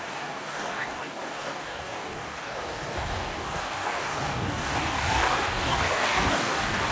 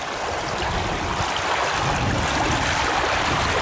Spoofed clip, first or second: first